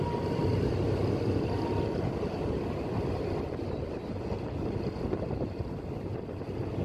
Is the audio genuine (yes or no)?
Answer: yes